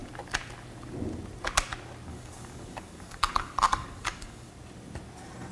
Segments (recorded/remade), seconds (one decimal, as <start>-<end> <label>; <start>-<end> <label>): 0.0-2.1 recorded; 2.1-4.5 remade; 4.5-5.5 recorded